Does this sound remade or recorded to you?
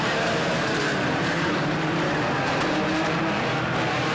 remade